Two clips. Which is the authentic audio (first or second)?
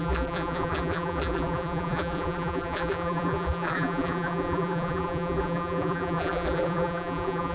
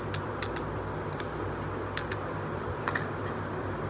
second